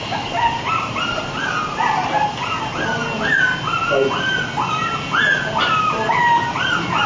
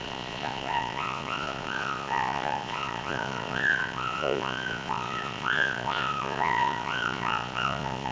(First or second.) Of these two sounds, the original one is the first